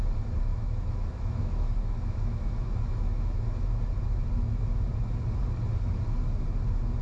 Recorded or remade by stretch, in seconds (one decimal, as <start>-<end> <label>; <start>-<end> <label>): 0.0-0.5 recorded; 0.5-3.8 remade; 3.8-7.0 recorded